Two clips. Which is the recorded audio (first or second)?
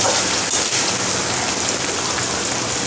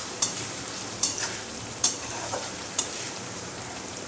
first